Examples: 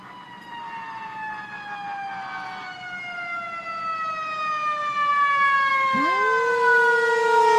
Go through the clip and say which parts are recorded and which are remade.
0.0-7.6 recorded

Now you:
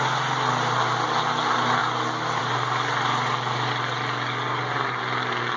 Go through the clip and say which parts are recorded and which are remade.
0.0-5.6 recorded